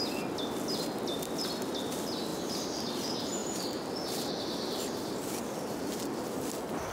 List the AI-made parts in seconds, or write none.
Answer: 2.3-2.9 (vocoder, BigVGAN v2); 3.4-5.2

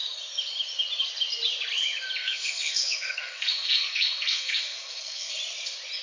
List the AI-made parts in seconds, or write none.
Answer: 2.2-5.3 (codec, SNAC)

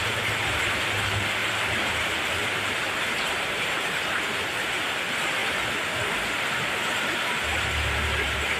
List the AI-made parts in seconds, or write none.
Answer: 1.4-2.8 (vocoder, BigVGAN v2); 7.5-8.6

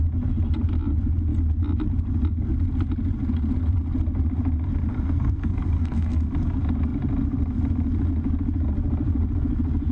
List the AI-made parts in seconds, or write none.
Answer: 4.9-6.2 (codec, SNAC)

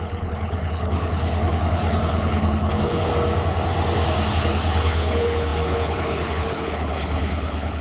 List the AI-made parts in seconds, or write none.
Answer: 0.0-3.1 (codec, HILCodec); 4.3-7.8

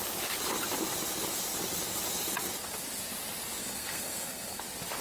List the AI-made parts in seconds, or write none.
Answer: 3.6-4.6 (codec, SNAC)

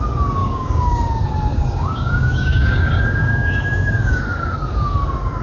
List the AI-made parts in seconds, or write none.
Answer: 0.4-1.1 (codec, DAC); 1.5-4.2

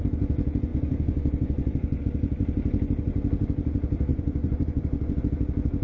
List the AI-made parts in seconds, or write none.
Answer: 0.7-2.0 (vocoder, Vocos); 4.1-5.2